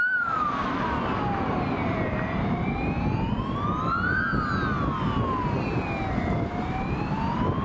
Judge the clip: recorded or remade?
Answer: recorded